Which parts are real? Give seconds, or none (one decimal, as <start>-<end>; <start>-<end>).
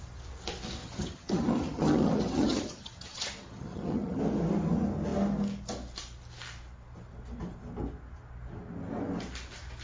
0.0-0.8; 4.2-9.8